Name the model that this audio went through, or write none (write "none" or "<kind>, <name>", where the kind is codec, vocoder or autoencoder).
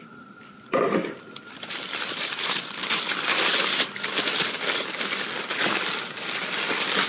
none